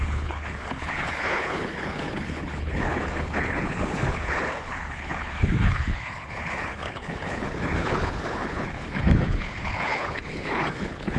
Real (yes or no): no